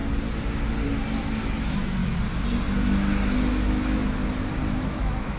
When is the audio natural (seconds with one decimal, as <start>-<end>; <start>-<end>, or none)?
0.0-1.6; 2.0-3.5; 4.2-4.7